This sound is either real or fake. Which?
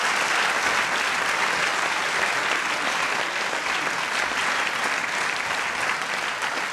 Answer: real